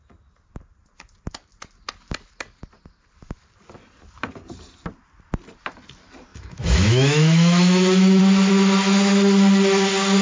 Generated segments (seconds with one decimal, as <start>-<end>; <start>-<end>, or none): 6.3-8.2